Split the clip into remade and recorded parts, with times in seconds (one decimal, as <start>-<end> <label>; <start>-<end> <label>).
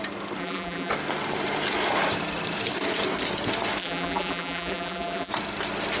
0.0-0.4 recorded; 0.4-0.9 remade; 0.9-3.8 recorded; 3.8-5.3 remade; 5.3-6.0 recorded